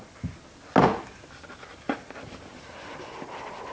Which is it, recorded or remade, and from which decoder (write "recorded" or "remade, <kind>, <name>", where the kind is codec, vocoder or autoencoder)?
recorded